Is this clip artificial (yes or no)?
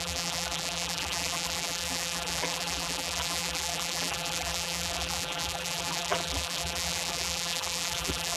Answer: yes